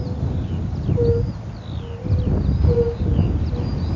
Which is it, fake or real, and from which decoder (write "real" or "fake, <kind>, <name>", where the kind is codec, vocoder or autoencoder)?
real